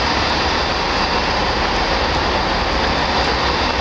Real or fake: real